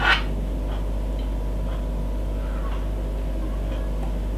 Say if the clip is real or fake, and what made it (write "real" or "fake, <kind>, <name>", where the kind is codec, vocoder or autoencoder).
real